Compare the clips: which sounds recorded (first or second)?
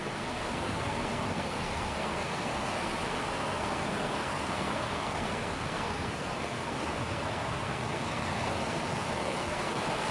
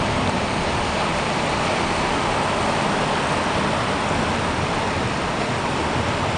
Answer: second